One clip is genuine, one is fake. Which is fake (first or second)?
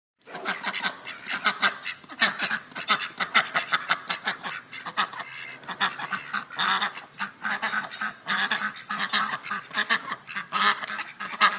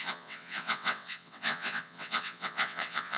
second